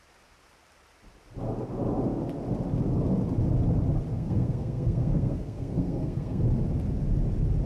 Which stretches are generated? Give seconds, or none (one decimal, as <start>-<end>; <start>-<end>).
4.1-6.4